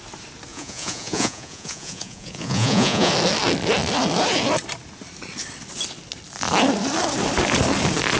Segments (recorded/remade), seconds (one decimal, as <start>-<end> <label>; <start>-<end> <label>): 0.0-0.5 recorded; 0.5-3.1 remade; 3.1-8.2 recorded